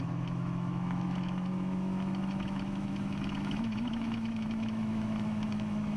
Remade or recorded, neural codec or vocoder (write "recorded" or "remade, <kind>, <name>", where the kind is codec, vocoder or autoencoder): remade, autoencoder, DAC-VAE